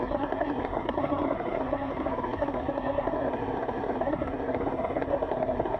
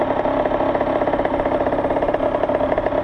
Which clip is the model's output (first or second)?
first